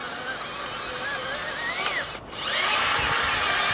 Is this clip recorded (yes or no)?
yes